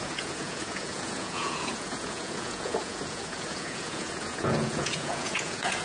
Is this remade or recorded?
remade